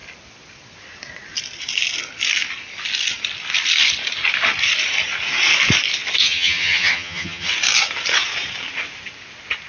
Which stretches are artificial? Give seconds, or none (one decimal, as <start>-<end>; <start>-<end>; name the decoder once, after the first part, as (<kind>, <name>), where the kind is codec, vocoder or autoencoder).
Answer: 6.2-7.5 (vocoder, HiFi-GAN)